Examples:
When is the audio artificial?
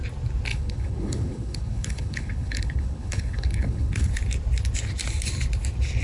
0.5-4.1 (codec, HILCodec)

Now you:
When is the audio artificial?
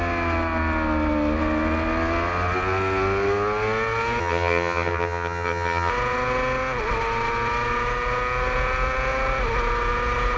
4.2-5.9 (vocoder, HiFi-GAN)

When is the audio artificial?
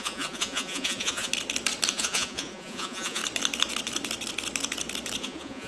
0.0-1.3 (vocoder, Vocos); 1.9-3.2; 5.2-5.7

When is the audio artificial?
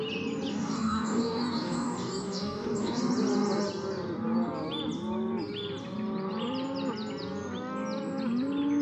0.5-3.0 (codec, DAC)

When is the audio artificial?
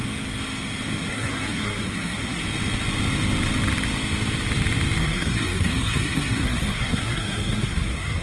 1.1-2.4 (codec, SNAC); 5.0-8.2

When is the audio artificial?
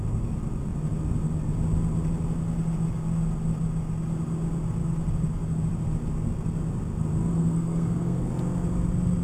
7.3-8.3 (codec, SNAC)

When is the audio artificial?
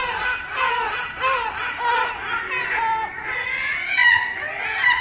none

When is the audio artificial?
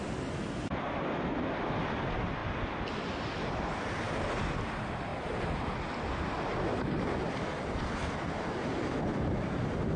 none